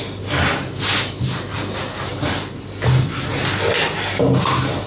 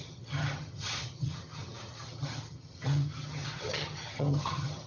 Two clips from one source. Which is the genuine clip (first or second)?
first